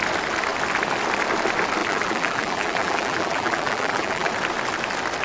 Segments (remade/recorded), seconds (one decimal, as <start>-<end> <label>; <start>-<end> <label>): 0.0-1.8 recorded; 1.8-4.3 remade; 4.3-5.2 recorded